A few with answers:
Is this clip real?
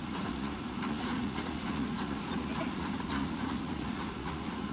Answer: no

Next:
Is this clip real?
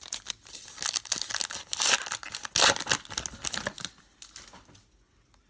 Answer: yes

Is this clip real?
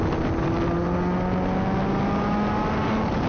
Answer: yes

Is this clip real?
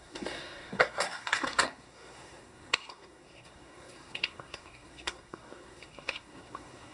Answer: no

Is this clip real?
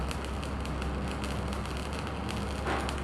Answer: yes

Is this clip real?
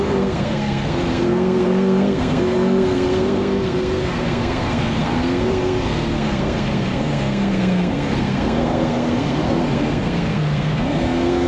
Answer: no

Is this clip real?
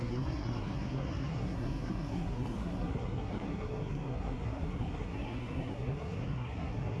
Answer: no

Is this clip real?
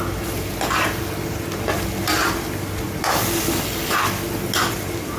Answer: yes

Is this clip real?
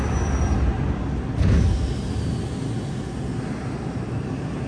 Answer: yes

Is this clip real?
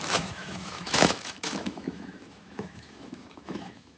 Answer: no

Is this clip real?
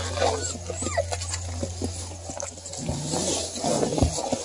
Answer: yes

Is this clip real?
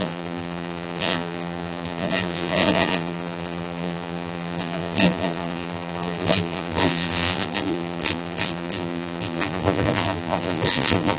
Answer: no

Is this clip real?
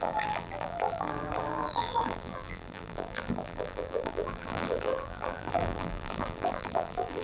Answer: no